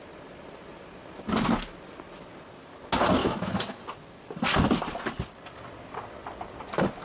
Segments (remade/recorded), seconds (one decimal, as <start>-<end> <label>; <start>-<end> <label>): 0.0-3.2 recorded; 3.2-3.8 remade; 3.8-7.0 recorded